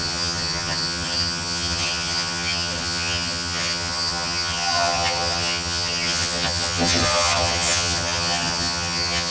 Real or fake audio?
fake